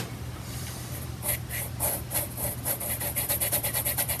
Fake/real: fake